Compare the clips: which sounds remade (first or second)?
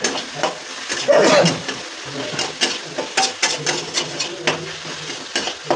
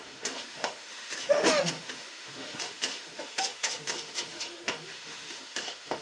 second